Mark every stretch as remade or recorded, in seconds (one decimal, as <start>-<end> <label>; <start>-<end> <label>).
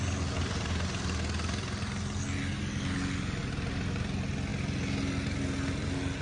0.0-6.2 recorded